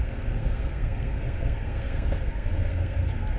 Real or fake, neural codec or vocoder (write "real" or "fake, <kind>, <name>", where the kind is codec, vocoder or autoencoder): fake, codec, SNAC